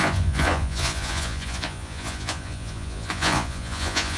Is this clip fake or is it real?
fake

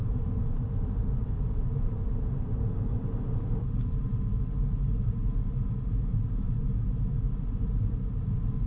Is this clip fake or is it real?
fake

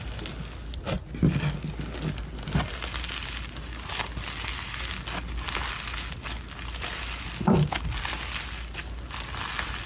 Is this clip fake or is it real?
real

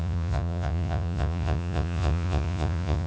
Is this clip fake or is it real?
fake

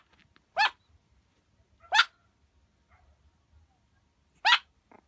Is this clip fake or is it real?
real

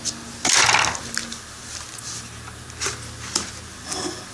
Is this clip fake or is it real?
real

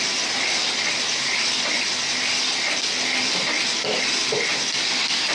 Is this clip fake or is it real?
real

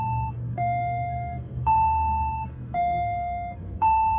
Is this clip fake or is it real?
fake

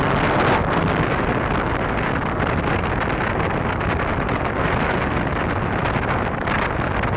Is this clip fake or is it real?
real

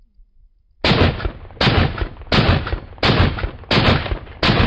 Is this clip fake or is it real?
real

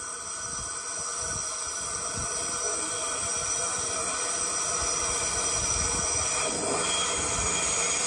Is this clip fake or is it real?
real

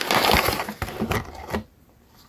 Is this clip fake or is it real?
fake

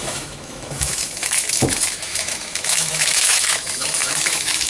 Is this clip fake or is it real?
fake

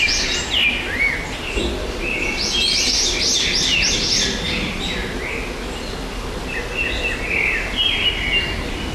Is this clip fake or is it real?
real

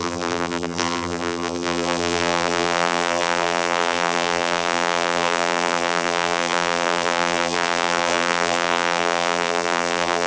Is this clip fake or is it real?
fake